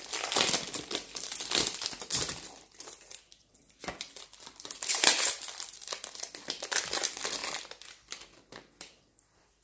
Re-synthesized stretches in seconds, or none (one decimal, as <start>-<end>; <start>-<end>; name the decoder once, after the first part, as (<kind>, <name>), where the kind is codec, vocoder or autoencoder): 0.0-7.4 (vocoder, BigVGAN v2); 8.5-9.6